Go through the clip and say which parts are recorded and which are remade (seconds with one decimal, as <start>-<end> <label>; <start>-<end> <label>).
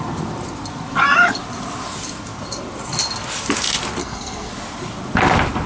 0.0-4.0 recorded; 4.0-4.5 remade; 4.5-5.7 recorded